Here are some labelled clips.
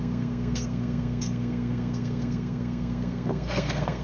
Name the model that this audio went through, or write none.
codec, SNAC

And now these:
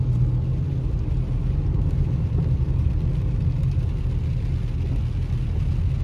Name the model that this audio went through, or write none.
none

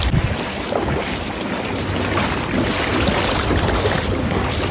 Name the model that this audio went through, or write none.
none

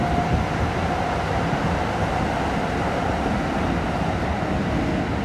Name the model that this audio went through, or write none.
none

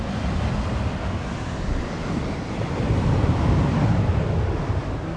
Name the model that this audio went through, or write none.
none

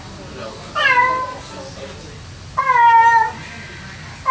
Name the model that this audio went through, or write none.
none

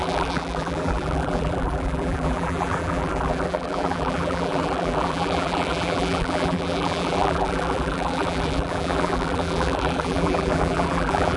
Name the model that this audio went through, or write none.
vocoder, BigVGAN v2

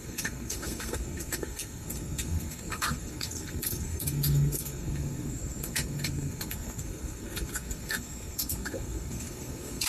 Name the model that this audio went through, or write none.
codec, SNAC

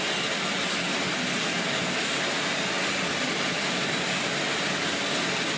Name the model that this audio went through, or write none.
none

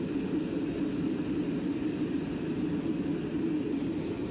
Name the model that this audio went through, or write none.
none